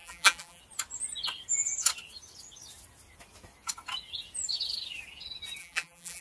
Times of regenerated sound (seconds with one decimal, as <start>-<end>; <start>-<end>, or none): 0.0-0.6; 5.6-6.2